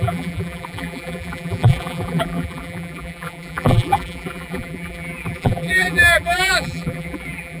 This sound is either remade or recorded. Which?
remade